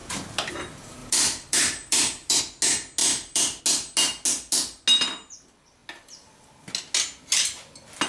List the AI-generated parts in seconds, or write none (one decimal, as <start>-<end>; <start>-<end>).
0.0-0.5; 1.0-2.4; 3.0-3.6

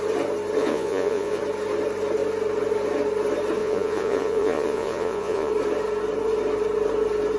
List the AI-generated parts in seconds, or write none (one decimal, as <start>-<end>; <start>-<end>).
0.6-1.4; 3.6-5.5

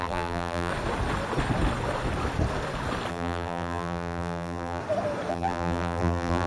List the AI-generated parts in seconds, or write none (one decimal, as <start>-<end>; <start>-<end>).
0.0-0.7; 3.1-4.8; 5.3-6.5

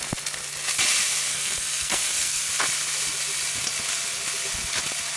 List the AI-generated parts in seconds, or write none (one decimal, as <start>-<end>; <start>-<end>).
1.3-2.4

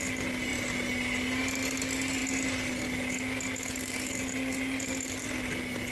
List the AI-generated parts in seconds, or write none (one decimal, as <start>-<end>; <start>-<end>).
none

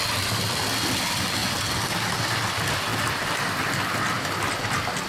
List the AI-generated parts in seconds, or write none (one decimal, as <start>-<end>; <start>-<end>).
none

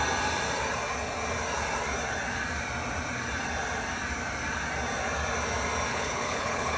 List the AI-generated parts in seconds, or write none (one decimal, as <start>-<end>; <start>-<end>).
5.9-6.8